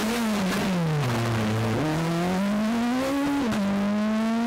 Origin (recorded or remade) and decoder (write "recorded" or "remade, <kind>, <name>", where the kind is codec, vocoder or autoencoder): recorded